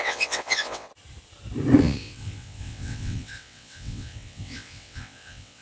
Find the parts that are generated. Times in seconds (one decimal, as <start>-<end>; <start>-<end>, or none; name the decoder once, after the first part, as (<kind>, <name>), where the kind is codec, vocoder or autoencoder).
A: 0.0-0.9 (vocoder, WaveNeXt); 1.8-5.6